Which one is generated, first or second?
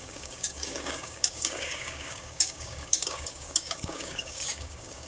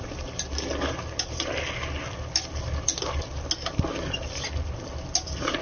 first